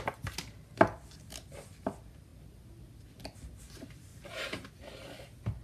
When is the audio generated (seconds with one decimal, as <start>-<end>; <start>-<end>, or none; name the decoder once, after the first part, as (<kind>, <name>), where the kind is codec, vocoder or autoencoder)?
4.1-4.7 (vocoder, BigVGAN v2)